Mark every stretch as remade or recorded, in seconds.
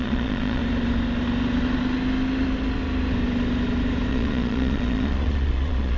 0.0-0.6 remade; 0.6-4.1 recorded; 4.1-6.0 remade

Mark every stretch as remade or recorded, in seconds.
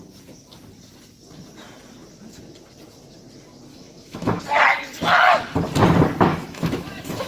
0.0-3.7 recorded; 3.7-4.4 remade; 4.4-6.3 recorded; 6.3-7.3 remade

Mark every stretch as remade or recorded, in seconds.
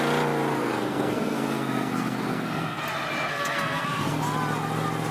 0.0-0.5 recorded; 0.5-2.8 remade; 2.8-3.3 recorded; 3.3-4.2 remade; 4.2-5.1 recorded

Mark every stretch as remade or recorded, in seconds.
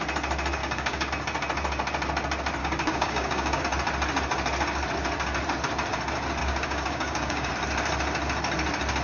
0.0-0.6 recorded; 0.6-1.1 remade; 1.1-2.6 recorded; 2.6-3.6 remade; 3.6-6.4 recorded; 6.4-7.5 remade; 7.5-9.0 recorded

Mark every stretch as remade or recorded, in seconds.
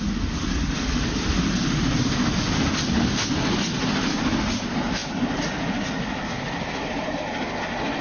0.0-8.0 recorded